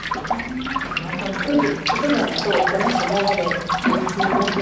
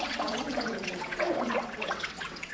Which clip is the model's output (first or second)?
second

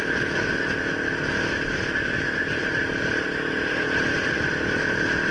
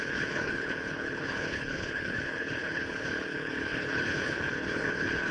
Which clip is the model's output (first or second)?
second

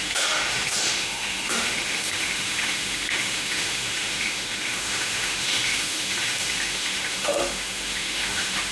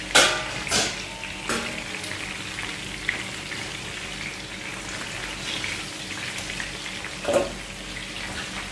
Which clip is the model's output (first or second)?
first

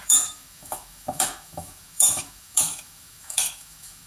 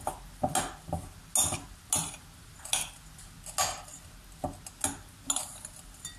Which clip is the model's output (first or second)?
first